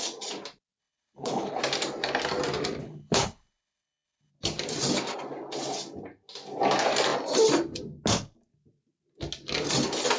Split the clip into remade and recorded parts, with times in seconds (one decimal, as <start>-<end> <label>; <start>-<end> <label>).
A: 0.0-0.8 recorded; 0.8-1.6 remade; 1.6-2.8 recorded; 2.8-4.3 remade; 4.3-10.2 recorded